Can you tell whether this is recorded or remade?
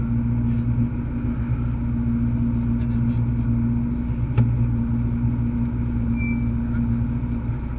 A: recorded